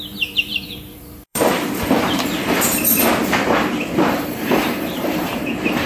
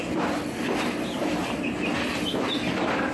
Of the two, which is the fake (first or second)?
first